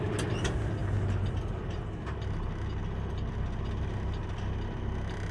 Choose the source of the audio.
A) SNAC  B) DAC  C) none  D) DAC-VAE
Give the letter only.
C